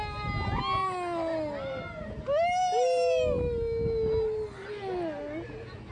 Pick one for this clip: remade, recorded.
recorded